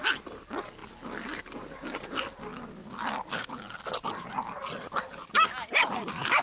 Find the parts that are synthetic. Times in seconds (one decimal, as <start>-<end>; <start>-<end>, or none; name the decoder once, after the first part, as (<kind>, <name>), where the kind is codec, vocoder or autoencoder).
none